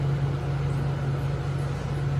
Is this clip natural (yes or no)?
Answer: yes